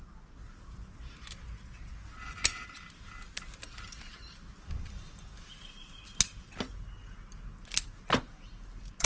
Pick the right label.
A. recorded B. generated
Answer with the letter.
A